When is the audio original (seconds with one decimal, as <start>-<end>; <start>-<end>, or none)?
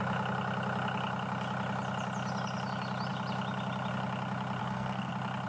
0.0-4.6; 5.1-5.5